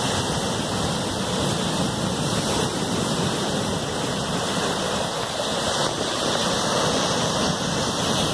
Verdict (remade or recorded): remade